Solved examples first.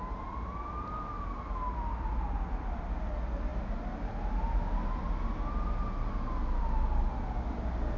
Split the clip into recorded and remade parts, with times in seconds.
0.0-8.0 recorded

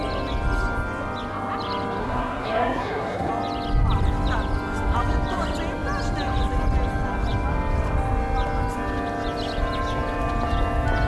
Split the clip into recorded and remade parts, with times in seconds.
0.0-2.0 recorded; 2.0-3.3 remade; 3.3-11.1 recorded

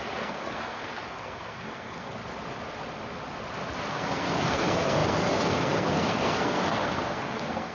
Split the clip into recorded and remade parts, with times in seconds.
0.0-2.2 remade; 2.2-3.9 recorded; 3.9-7.7 remade